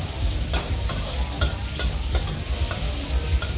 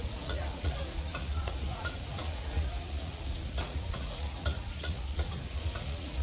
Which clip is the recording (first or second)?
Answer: first